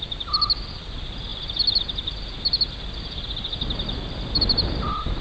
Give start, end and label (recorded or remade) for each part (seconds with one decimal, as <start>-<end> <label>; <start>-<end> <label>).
0.0-5.2 recorded